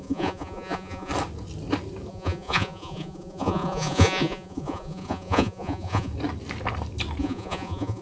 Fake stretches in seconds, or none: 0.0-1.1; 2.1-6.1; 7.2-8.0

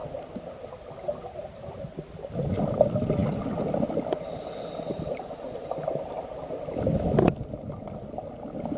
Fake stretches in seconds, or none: none

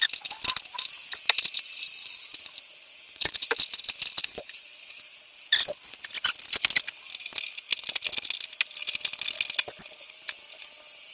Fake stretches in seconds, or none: 2.0-3.4; 4.2-4.7